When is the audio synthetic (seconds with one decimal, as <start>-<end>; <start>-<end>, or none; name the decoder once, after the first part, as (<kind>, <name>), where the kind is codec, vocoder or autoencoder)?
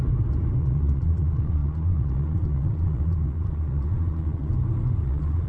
0.6-4.5 (vocoder, Vocos); 5.0-5.5